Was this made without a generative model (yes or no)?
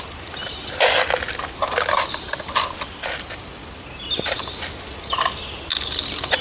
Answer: yes